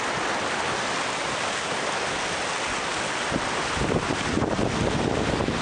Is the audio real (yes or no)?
yes